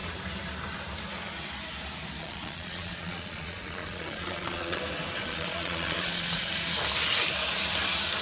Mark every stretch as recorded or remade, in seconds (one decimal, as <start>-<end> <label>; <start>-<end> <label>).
0.0-2.2 recorded; 2.2-4.8 remade; 4.8-5.2 recorded; 5.2-6.5 remade; 6.5-8.2 recorded